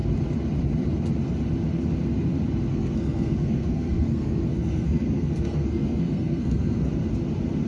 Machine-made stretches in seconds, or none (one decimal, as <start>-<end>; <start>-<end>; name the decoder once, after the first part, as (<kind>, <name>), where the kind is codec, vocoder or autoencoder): 2.7-6.9 (codec, SNAC)